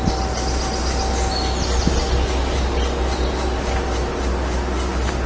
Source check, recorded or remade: recorded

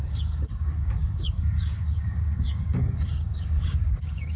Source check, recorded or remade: remade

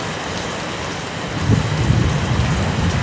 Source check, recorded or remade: recorded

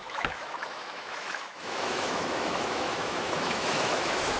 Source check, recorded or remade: remade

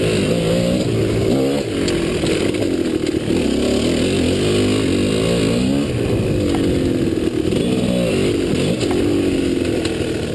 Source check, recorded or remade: recorded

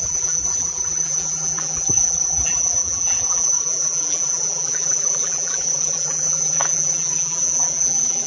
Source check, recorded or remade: remade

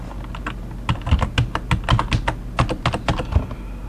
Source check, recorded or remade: recorded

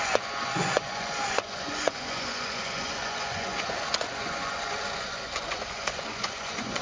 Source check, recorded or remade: remade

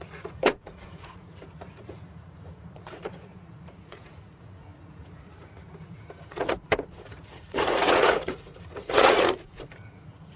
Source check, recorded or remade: remade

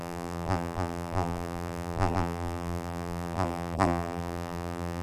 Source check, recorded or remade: remade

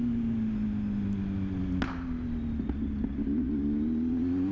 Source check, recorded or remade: recorded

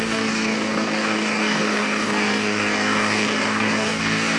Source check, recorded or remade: remade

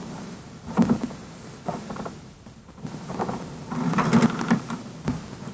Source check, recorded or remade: recorded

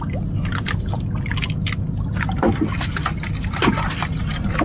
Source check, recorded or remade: recorded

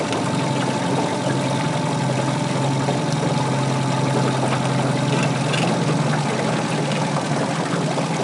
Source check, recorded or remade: recorded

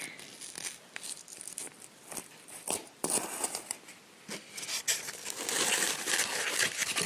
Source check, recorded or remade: remade